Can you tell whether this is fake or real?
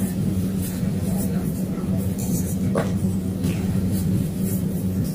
real